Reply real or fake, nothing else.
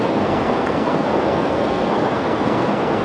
fake